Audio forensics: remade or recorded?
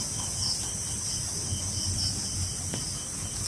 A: recorded